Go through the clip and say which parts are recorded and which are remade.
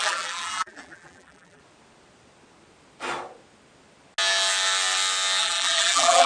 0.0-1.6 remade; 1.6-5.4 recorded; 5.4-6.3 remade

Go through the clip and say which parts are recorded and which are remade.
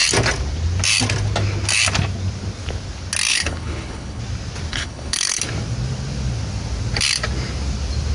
0.0-3.3 recorded; 3.3-4.2 remade; 4.2-4.7 recorded; 4.7-5.4 remade; 5.4-8.1 recorded